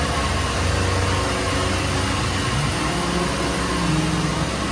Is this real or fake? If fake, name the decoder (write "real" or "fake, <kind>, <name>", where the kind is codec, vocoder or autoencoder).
real